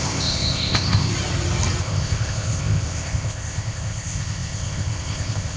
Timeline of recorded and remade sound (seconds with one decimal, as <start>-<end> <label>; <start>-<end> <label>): 0.0-1.1 remade; 1.1-1.8 recorded; 1.8-5.6 remade